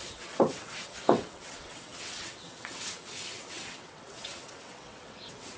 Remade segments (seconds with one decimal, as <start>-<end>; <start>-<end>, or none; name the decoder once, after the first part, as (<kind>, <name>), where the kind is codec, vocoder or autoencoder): 0.0-5.6 (vocoder, WaveNeXt)